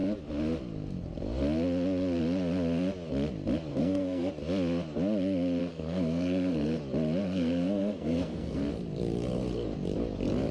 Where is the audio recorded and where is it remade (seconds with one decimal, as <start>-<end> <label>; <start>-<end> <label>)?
0.0-3.7 recorded; 3.7-4.3 remade; 4.3-5.6 recorded; 5.6-6.8 remade; 6.8-7.2 recorded; 7.2-8.6 remade; 8.6-10.5 recorded